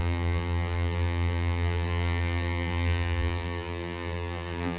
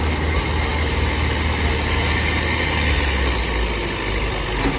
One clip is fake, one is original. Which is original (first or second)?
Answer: second